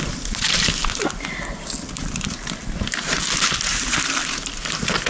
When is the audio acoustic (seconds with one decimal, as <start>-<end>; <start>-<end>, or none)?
0.0-5.1